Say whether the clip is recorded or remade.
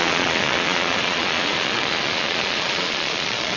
remade